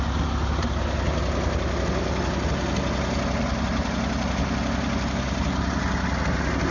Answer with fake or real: real